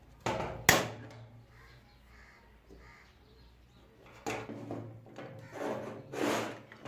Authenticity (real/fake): real